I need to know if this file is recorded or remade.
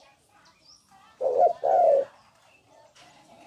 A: recorded